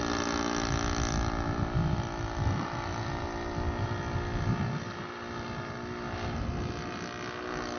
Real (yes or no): yes